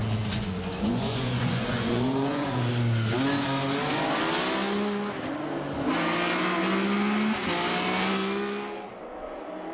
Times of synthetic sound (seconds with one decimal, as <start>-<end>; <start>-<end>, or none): 0.0-2.7